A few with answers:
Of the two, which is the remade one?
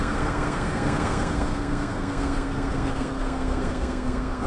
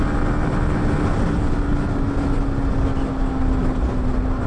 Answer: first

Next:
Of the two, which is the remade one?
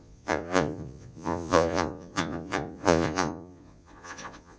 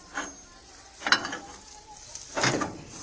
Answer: first